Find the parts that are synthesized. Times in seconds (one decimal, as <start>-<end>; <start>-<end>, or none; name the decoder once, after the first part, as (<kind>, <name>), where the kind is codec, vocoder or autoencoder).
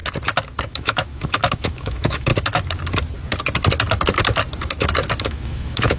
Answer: 0.6-2.3 (autoencoder, DAC-VAE); 5.2-6.0